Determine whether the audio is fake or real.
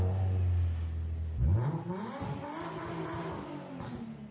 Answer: real